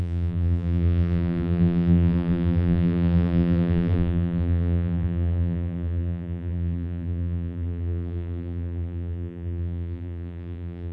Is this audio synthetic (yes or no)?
yes